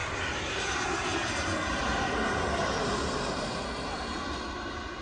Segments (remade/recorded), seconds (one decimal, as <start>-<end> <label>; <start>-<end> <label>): 0.0-5.0 recorded